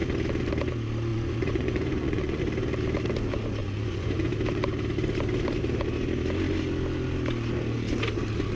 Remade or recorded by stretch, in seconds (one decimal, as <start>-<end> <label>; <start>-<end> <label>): 0.0-1.1 recorded; 1.1-2.4 remade; 2.4-3.6 recorded; 3.6-4.3 remade; 4.3-8.6 recorded